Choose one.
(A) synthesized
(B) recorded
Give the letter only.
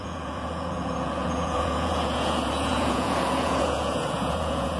A